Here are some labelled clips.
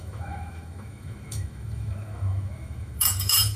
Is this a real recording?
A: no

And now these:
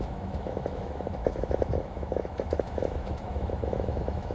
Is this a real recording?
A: no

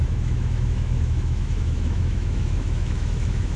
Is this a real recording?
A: no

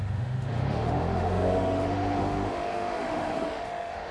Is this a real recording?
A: no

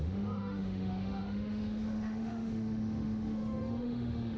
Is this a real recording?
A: no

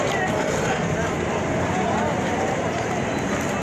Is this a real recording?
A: yes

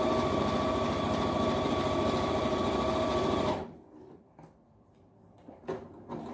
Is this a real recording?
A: yes